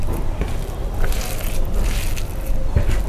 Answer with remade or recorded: recorded